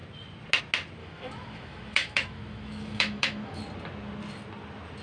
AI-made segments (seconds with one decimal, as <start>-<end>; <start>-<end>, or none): 1.0-3.6

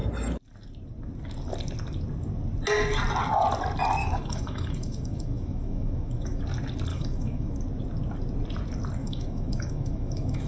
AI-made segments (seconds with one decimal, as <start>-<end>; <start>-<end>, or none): 4.0-6.4; 6.9-7.6; 9.0-10.5

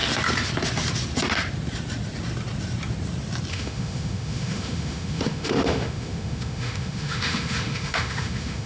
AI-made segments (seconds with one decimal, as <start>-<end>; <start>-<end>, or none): 3.5-8.7

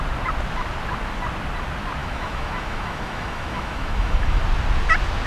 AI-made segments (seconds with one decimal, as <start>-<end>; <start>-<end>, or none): 2.0-4.4

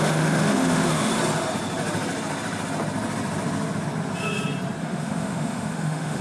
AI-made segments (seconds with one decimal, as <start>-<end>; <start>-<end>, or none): 0.0-1.1; 4.8-6.2

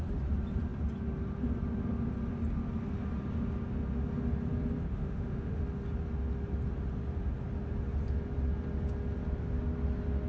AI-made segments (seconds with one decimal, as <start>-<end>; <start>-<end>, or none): 4.9-5.6

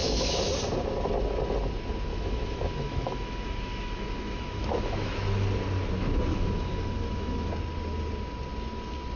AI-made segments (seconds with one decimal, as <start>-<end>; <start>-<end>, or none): 0.0-0.5; 2.1-5.1; 6.3-7.5

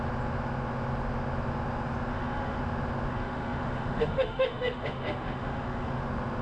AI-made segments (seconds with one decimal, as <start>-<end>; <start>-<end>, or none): 2.1-2.6; 3.1-6.0